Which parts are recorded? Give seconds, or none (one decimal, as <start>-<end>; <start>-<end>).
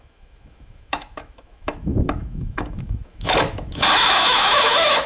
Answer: none